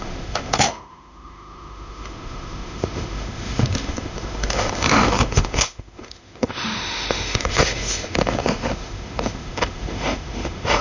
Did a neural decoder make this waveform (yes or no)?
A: yes